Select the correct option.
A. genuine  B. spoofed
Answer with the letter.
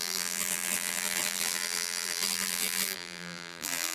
B